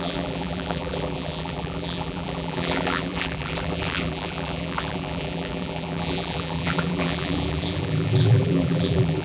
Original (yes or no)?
no